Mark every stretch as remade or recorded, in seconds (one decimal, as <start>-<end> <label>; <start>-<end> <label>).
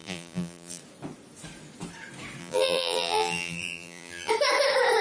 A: 0.0-0.8 remade; 0.8-2.4 recorded; 2.4-4.3 remade; 4.3-5.0 recorded